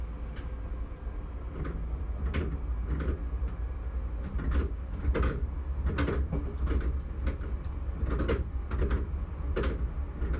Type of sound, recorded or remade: recorded